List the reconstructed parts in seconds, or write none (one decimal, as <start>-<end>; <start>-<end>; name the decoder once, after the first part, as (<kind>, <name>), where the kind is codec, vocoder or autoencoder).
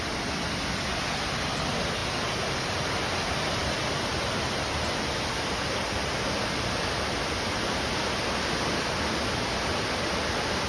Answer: none